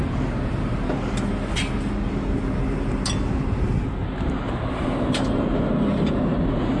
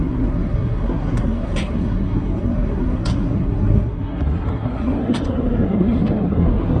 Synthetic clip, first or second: second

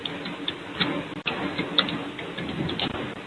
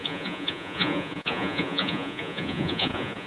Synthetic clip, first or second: second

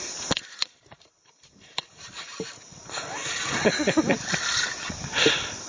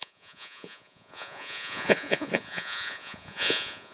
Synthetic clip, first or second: second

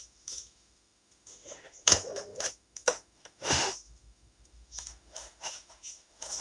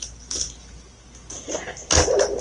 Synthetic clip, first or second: first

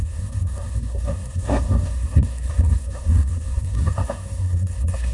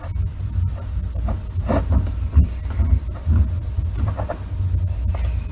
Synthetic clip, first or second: first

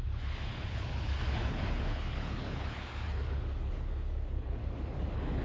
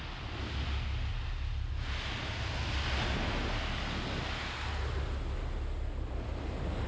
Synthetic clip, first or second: first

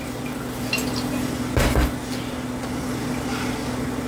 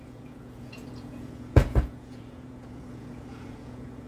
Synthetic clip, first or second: second